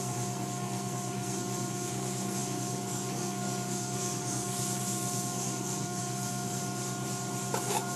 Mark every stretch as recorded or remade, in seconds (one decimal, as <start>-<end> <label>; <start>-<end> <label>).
0.0-6.6 remade; 6.6-7.6 recorded; 7.6-8.0 remade